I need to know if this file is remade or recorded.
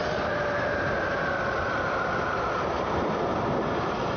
remade